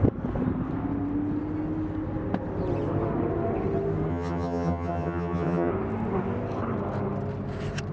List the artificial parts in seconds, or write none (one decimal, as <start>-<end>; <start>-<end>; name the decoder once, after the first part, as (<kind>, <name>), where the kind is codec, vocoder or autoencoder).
4.1-5.7 (vocoder, HiFi-GAN)